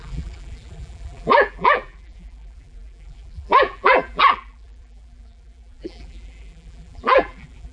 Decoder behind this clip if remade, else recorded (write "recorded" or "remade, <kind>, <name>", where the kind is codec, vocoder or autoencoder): remade, vocoder, BigVGAN v2